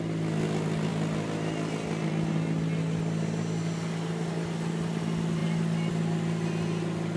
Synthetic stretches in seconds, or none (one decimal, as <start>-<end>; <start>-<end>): none

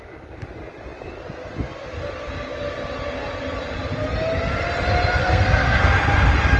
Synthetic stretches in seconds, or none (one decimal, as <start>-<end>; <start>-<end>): 5.2-5.8